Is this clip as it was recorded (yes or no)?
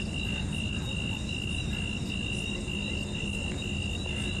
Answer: yes